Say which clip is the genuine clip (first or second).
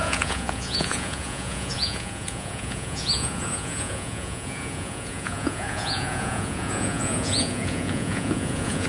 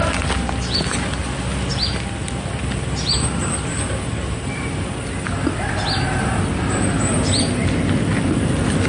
second